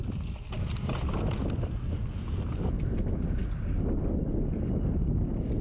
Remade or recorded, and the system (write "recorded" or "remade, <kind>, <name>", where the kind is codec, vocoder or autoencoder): recorded